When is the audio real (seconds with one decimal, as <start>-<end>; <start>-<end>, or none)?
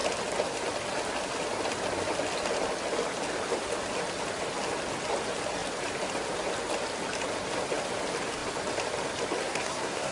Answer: 0.0-9.4